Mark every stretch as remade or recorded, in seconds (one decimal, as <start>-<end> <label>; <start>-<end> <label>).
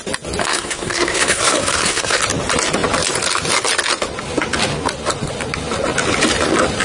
0.0-0.4 recorded; 0.4-2.2 remade; 2.2-6.8 recorded